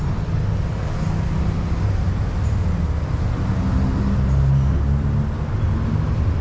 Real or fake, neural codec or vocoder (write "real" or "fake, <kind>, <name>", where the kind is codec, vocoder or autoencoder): real